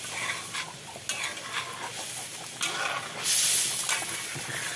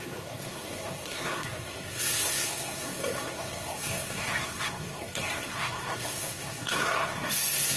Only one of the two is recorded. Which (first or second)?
first